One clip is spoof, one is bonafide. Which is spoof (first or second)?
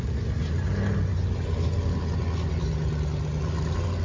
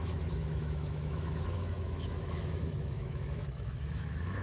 second